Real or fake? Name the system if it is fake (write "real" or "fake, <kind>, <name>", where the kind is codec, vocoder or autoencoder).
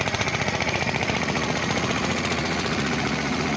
fake, vocoder, Vocos